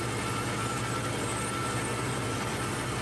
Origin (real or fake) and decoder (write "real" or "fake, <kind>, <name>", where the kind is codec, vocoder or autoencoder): real